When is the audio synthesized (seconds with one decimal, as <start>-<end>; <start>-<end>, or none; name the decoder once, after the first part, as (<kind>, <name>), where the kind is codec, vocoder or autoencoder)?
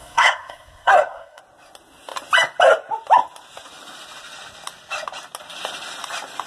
0.0-1.4 (codec, SNAC)